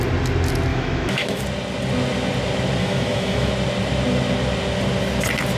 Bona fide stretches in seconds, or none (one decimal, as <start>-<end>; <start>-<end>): 0.0-0.7; 1.4-2.8; 3.5-5.6